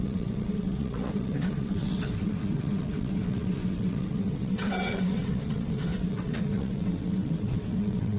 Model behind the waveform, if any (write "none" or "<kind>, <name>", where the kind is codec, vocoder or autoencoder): vocoder, WaveNeXt